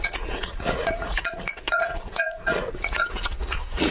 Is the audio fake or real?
fake